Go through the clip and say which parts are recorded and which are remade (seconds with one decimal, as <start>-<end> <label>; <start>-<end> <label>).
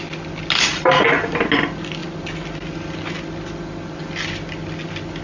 0.0-0.7 recorded; 0.7-1.4 remade; 1.4-5.2 recorded